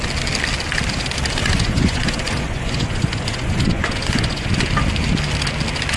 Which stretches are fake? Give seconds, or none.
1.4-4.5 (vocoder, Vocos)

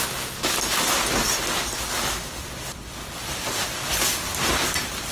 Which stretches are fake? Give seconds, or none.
none

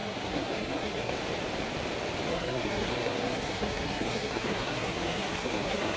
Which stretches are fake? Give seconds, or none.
0.0-1.1 (codec, SNAC); 2.3-6.0

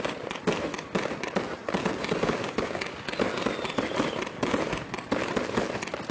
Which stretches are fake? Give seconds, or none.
2.2-2.9 (codec, DAC)

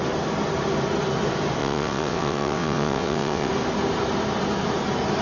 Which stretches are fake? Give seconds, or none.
1.6-3.5 (vocoder, WaveNeXt)

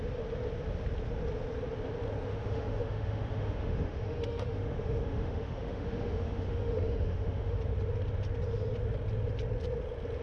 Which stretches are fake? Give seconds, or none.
2.3-7.6 (autoencoder, DAC-VAE)

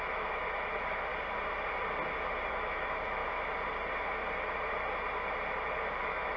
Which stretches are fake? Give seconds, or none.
0.0-1.1 (autoencoder, DAC-VAE); 2.5-3.2; 6.0-6.4

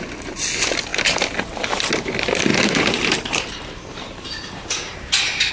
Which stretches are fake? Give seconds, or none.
2.5-5.5 (vocoder, BigVGAN v2)